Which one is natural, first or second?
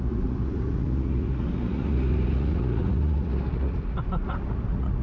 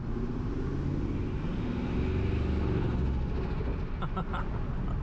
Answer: second